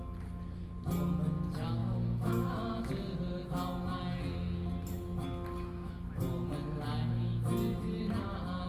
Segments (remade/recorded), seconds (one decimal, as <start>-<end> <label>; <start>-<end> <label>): 0.0-1.8 recorded; 1.8-2.9 remade; 2.9-8.7 recorded